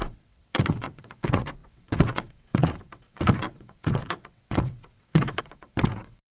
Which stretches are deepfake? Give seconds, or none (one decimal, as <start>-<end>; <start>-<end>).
0.0-6.3